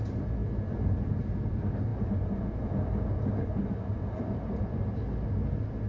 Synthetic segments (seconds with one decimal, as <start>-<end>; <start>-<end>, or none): none